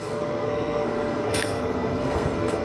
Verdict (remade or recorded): remade